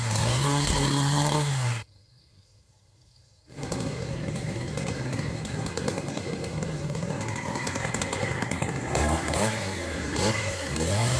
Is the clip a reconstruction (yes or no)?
yes